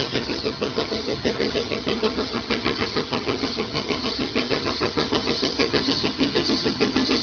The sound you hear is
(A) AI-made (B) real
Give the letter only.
A